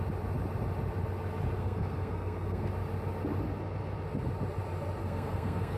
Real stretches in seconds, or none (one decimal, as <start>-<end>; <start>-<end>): 0.0-1.6; 2.7-5.0